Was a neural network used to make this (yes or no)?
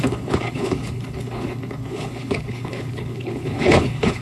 yes